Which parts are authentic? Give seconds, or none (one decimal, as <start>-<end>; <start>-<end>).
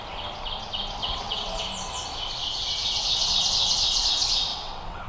0.0-1.0; 1.6-2.6; 3.4-4.5